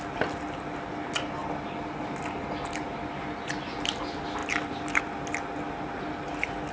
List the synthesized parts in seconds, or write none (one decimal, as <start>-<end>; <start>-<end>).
none